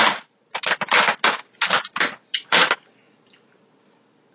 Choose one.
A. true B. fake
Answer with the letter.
A